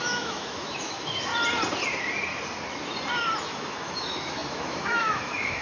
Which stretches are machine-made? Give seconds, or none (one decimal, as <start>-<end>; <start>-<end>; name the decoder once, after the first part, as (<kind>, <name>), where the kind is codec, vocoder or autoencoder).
0.0-1.3 (autoencoder, DAC-VAE); 3.4-5.6